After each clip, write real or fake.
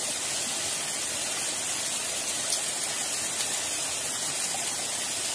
real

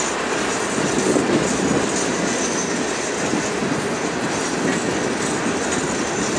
real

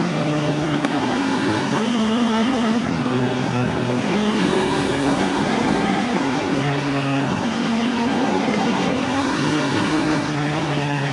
fake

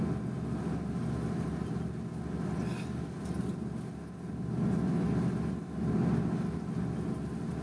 real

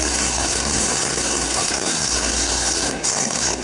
fake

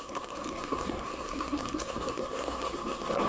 fake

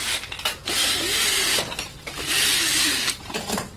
real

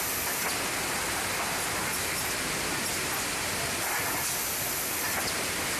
real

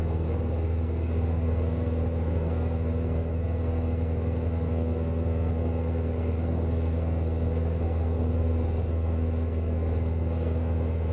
fake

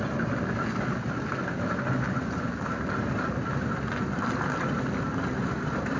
real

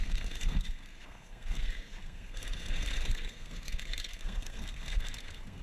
fake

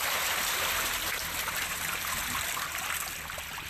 real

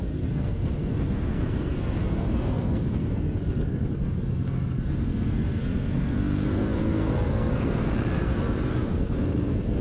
fake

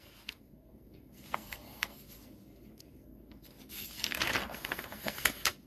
fake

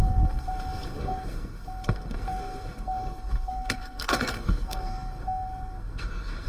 fake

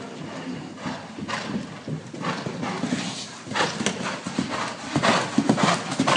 real